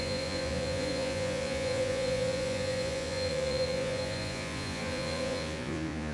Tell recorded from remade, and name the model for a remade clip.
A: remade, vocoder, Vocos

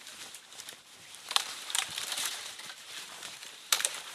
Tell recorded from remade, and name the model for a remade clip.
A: remade, vocoder, BigVGAN v2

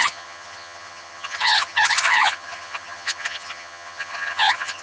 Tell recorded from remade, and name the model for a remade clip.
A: remade, vocoder, HiFi-GAN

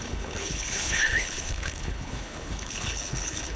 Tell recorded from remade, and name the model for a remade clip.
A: remade, codec, HILCodec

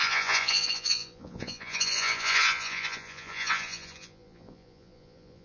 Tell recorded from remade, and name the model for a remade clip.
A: remade, vocoder, Vocos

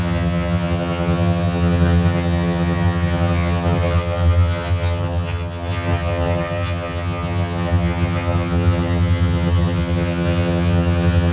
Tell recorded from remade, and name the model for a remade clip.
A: remade, vocoder, HiFi-GAN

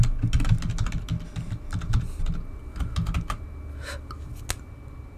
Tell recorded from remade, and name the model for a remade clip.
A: recorded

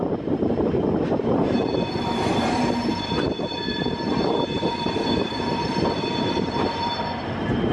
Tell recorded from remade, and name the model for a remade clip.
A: remade, vocoder, BigVGAN v2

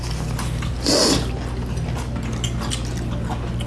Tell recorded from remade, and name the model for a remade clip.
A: recorded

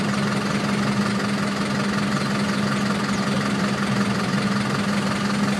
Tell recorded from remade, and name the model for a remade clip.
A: recorded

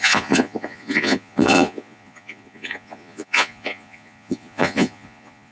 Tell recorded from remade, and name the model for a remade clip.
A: remade, vocoder, Vocos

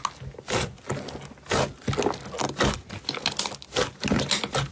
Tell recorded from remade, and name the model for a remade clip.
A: recorded